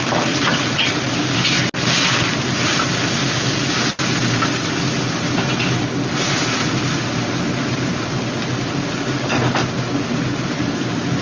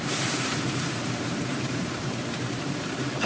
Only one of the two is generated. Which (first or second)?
second